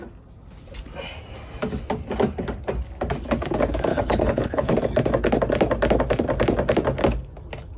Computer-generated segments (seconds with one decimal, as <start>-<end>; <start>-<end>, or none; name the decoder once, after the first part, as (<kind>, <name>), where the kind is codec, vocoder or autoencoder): 3.9-4.7 (codec, HILCodec)

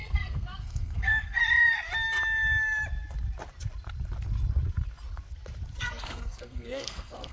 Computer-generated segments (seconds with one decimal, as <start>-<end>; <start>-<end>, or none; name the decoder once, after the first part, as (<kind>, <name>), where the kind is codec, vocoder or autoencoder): 0.0-1.4 (codec, SNAC); 5.8-7.3

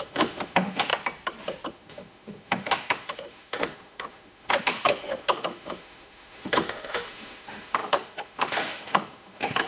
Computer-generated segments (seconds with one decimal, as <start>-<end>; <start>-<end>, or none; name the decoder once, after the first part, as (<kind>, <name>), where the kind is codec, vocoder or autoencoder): 0.0-0.9 (autoencoder, DAC-VAE); 1.7-9.7

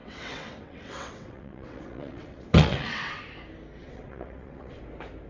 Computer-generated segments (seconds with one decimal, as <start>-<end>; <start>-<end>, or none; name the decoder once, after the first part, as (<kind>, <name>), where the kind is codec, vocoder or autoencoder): 0.0-3.2 (vocoder, WaveNeXt); 3.8-4.8

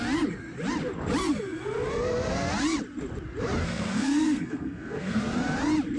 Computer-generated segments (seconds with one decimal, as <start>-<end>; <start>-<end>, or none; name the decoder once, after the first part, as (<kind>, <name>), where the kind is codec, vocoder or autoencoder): 3.6-5.2 (codec, SNAC)

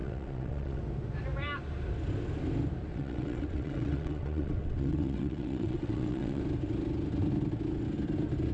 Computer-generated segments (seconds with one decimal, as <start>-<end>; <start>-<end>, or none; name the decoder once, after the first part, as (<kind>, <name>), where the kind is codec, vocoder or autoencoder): 0.0-0.8 (vocoder, WaveNeXt); 2.9-6.4

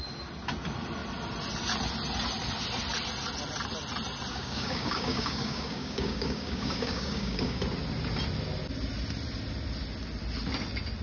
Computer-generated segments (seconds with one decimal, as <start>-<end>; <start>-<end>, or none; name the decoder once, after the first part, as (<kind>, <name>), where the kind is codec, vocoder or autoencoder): 4.3-7.6 (codec, DAC)

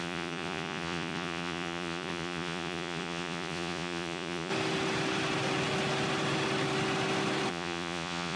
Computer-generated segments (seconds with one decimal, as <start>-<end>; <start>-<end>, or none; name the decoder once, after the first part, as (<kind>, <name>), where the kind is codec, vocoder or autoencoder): 0.0-4.5 (vocoder, Vocos); 7.5-8.4